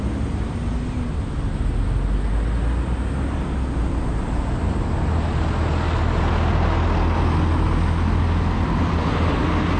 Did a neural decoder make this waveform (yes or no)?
no